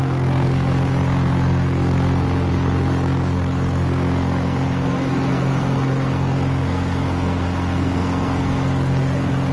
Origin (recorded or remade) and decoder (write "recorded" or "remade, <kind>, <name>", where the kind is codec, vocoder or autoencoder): remade, codec, SNAC